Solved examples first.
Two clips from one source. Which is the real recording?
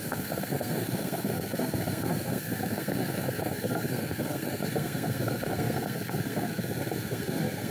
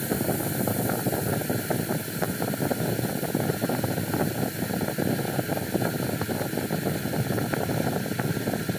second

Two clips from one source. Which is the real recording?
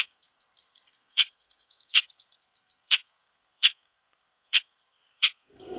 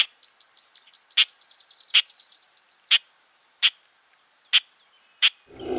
second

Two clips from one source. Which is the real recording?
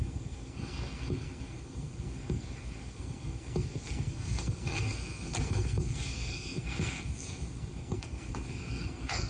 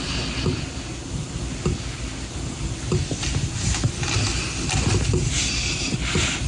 second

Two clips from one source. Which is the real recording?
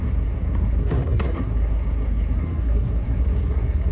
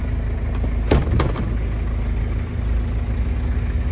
second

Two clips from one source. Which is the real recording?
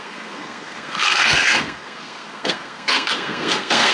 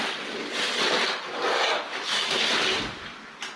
second